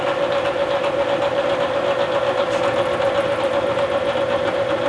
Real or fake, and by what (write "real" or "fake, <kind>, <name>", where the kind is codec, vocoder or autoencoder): real